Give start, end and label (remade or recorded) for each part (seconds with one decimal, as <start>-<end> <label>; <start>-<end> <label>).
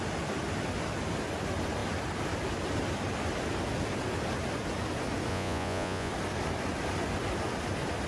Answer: 0.0-5.3 recorded; 5.3-6.1 remade; 6.1-8.1 recorded